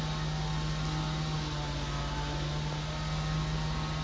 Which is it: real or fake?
real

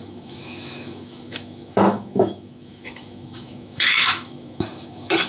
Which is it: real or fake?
fake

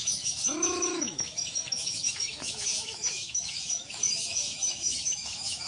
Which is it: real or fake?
fake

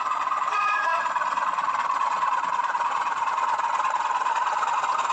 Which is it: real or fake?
fake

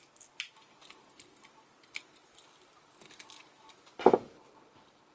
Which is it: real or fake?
real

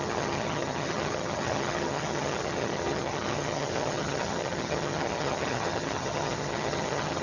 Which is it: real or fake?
fake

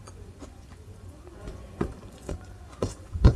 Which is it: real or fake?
fake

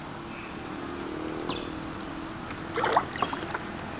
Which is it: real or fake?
real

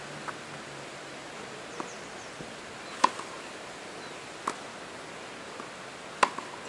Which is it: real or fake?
real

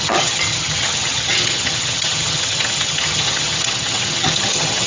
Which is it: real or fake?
fake